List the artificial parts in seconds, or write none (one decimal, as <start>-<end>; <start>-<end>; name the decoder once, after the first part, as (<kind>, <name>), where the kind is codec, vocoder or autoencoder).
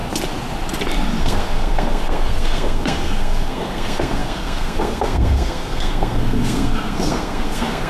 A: 1.2-7.9 (codec, SNAC)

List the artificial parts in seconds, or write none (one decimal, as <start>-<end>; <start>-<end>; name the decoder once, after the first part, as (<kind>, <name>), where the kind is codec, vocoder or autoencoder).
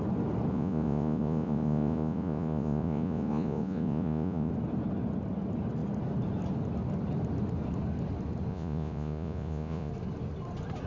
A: 0.5-4.5 (vocoder, Vocos); 8.5-9.9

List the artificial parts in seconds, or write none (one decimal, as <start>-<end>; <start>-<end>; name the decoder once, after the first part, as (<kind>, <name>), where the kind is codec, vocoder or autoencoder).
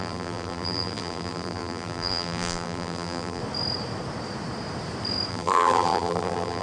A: 0.0-3.4 (vocoder, BigVGAN v2); 5.3-6.6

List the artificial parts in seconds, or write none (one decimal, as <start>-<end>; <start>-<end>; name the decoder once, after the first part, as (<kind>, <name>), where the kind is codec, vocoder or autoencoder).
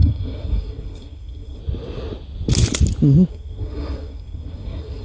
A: 0.0-1.6 (codec, SNAC); 3.3-5.0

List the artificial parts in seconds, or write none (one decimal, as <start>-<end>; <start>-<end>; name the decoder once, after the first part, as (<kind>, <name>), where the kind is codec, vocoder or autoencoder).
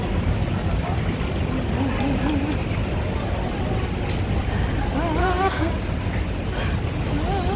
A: 5.2-5.7 (codec, SNAC)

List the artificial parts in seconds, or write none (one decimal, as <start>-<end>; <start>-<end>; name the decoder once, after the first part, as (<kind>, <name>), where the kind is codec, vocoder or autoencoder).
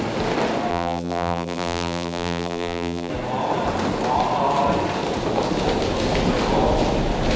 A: 0.7-3.1 (vocoder, BigVGAN v2)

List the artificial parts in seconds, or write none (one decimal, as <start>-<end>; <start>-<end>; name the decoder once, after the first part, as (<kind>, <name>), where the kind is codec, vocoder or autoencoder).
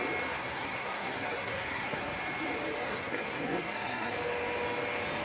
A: 0.4-2.0 (codec, SNAC); 2.9-4.1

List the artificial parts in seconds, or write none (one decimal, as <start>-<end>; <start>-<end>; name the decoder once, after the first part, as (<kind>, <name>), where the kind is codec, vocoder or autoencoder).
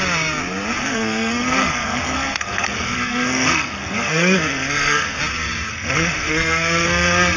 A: 0.8-5.2 (codec, SNAC); 5.7-7.4